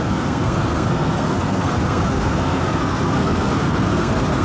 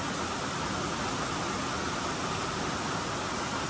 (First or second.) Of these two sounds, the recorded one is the second